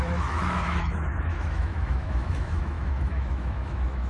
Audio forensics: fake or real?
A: fake